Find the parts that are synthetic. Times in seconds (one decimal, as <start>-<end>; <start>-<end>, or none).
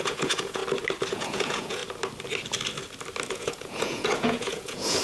0.0-0.6; 1.1-1.8; 3.3-5.0